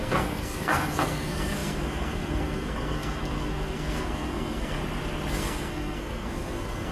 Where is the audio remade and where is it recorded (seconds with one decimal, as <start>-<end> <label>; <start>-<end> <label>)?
0.0-4.8 remade; 4.8-5.3 recorded; 5.3-6.9 remade